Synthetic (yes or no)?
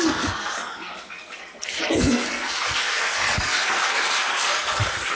yes